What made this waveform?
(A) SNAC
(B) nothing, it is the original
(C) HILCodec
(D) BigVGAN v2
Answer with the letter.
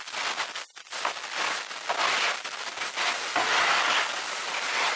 B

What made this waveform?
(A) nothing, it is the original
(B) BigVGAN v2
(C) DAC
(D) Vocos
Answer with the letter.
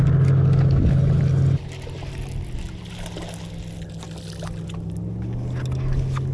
A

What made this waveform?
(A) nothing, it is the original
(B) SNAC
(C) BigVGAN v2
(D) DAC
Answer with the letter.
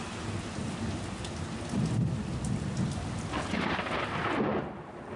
A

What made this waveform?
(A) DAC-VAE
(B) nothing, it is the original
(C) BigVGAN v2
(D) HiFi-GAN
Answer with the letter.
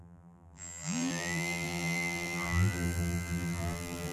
C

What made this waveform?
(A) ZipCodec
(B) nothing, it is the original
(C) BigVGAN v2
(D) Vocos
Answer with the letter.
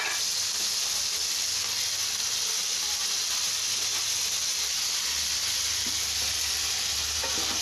B